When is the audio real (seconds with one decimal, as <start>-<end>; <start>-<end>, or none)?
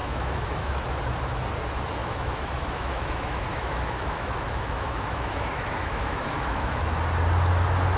0.8-2.0; 6.8-8.0